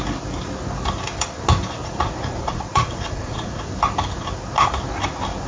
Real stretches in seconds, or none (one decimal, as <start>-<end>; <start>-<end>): 0.0-1.8; 3.7-5.5